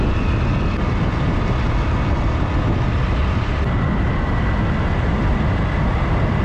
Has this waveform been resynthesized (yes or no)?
no